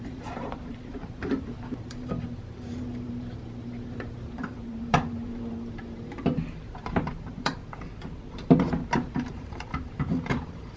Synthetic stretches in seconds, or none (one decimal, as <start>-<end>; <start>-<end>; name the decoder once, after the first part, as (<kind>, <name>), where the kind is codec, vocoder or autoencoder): 0.0-7.6 (vocoder, BigVGAN v2); 9.1-10.8